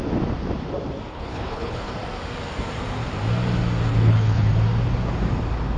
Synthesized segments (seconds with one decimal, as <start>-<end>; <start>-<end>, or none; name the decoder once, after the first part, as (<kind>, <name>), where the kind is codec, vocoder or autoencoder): 1.1-1.9 (codec, HILCodec); 3.9-4.5

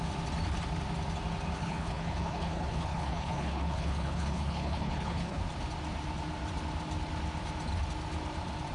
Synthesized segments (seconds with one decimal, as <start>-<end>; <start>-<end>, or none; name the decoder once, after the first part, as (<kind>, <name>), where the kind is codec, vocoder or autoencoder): 1.6-5.4 (codec, HILCodec)

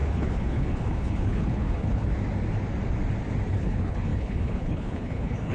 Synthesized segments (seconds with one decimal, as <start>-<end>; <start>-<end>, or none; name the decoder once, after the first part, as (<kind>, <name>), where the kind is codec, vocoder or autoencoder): 0.0-2.1 (codec, HILCodec); 3.5-5.5

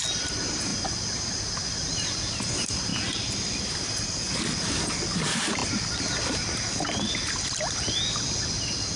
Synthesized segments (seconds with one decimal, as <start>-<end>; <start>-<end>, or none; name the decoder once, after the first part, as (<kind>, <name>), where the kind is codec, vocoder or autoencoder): none

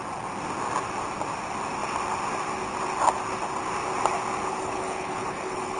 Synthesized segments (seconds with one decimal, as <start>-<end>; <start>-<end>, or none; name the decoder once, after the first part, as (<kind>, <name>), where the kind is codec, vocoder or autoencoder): 4.5-5.8 (codec, HILCodec)

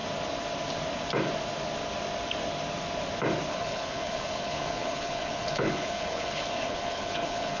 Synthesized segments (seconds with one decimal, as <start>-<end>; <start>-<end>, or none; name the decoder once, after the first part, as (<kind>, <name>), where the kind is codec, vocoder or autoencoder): 3.5-7.6 (codec, HILCodec)